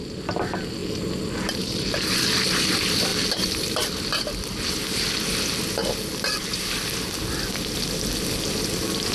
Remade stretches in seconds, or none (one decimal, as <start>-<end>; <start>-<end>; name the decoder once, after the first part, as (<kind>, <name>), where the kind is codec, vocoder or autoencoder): none